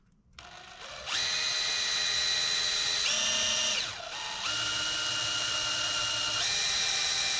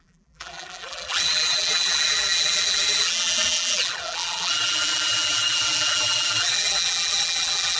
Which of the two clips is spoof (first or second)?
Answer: second